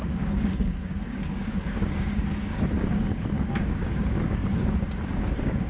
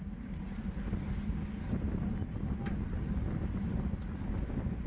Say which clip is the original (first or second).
second